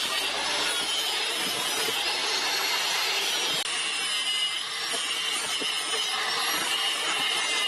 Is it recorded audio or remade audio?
recorded